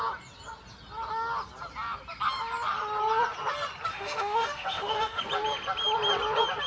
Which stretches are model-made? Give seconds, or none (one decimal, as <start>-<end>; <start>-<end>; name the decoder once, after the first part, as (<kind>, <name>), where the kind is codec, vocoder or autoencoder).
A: 3.9-5.2 (autoencoder, DAC-VAE)